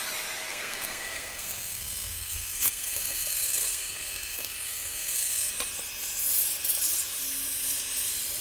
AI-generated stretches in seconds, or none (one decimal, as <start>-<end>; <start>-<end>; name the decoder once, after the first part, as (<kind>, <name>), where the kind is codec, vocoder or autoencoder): 0.5-5.5 (codec, SNAC)